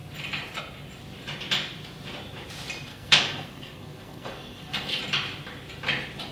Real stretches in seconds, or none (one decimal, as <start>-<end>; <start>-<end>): 0.0-2.9; 5.0-6.3